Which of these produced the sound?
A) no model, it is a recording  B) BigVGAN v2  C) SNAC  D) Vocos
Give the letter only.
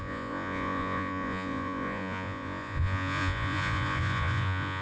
D